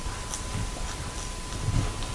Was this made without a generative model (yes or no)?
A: yes